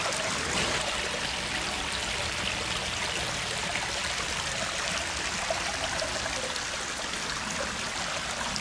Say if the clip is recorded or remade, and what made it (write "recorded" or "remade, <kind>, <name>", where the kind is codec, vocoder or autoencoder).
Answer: recorded